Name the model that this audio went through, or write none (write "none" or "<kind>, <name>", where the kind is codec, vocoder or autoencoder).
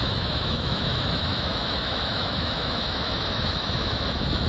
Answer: autoencoder, DAC-VAE